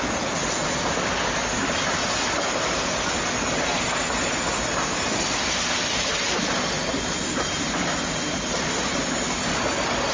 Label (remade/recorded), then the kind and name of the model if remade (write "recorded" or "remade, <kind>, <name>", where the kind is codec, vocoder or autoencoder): recorded